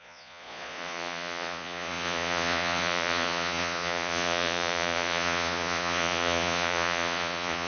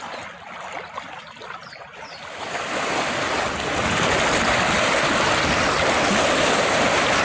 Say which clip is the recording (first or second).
second